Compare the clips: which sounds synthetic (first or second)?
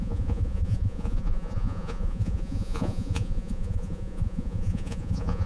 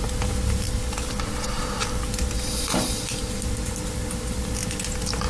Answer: first